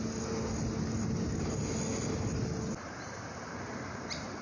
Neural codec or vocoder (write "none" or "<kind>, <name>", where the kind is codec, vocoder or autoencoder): none